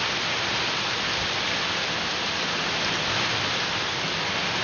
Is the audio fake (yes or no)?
no